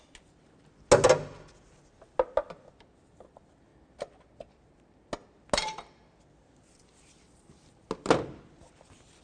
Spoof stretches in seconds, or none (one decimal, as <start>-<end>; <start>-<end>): none